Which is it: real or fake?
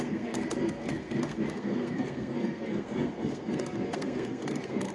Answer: fake